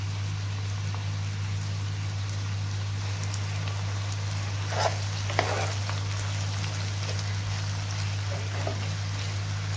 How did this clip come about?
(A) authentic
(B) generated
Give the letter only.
A